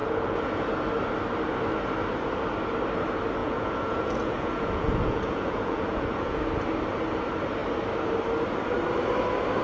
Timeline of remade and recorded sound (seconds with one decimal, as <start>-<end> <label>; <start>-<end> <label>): 0.0-0.7 remade; 0.7-3.4 recorded; 3.4-6.4 remade; 6.4-9.6 recorded